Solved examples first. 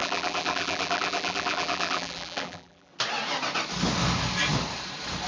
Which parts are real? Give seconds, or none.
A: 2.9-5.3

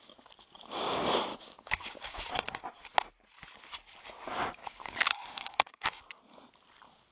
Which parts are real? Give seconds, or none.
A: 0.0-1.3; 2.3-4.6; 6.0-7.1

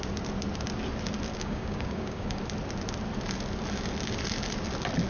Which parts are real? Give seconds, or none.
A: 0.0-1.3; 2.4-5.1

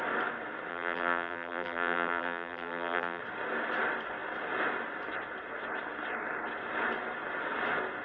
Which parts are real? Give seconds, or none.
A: 0.0-0.7; 3.2-8.0